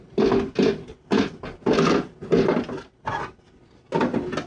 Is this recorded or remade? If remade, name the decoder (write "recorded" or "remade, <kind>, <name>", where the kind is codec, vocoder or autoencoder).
recorded